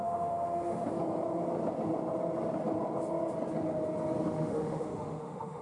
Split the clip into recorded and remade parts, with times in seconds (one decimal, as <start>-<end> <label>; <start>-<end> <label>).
0.0-0.8 remade; 0.8-4.2 recorded; 4.2-5.6 remade